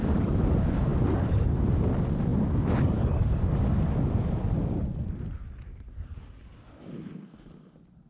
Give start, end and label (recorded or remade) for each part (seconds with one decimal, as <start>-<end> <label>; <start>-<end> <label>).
0.0-8.1 recorded